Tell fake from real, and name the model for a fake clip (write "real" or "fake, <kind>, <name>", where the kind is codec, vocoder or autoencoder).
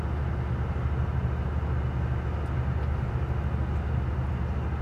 real